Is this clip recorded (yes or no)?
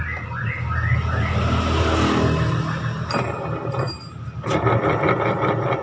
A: yes